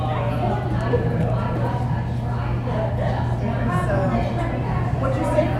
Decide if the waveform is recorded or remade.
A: recorded